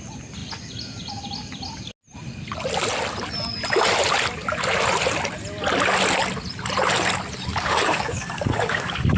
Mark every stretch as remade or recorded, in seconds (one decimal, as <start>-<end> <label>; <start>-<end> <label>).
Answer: 0.0-7.5 recorded; 7.5-9.2 remade